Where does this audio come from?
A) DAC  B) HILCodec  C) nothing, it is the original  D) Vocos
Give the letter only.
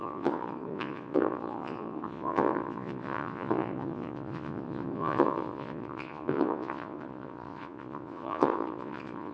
D